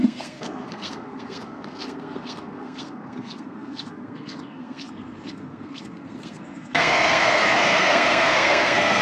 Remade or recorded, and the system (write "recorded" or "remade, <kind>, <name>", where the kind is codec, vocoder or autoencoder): remade, codec, SNAC